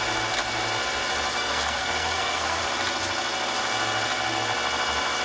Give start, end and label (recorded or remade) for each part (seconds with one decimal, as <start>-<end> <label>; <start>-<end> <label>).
0.0-1.3 recorded; 1.3-2.6 remade; 2.6-5.2 recorded